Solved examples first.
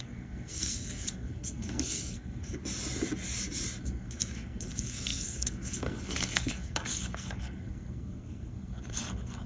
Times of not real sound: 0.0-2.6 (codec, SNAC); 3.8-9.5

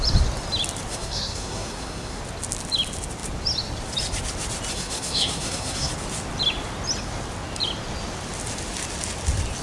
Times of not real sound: 0.9-2.2 (codec, SNAC); 4.7-5.9

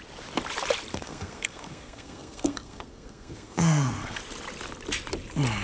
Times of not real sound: 0.9-4.2 (codec, SNAC)

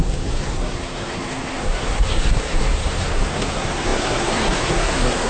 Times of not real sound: 0.0-5.3 (codec, SNAC)

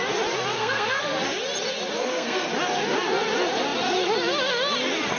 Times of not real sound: 0.5-1.0 (codec, SNAC); 2.0-2.5

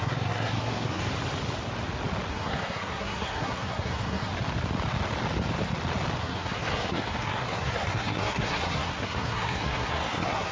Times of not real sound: 0.0-1.0 (codec, SNAC); 2.3-4.3; 6.2-10.5

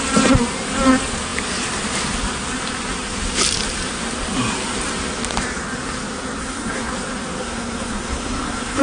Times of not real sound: 6.4-6.9 (codec, SNAC); 7.4-8.8

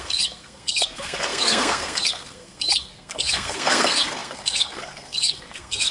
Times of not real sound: 0.0-5.9 (codec, SNAC)